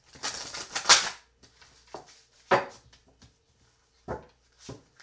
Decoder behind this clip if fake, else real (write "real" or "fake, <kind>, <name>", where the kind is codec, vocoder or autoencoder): real